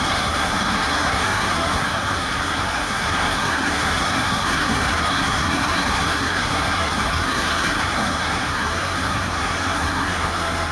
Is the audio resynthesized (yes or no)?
yes